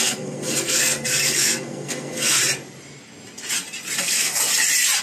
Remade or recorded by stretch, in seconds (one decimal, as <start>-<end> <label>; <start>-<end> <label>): 0.0-2.4 remade; 2.4-4.0 recorded; 4.0-4.5 remade; 4.5-5.0 recorded